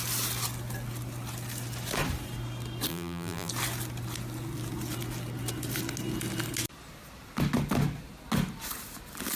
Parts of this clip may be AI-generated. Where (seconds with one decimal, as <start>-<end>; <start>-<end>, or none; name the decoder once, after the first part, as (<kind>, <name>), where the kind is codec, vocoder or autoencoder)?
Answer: 2.9-3.5 (vocoder, BigVGAN v2)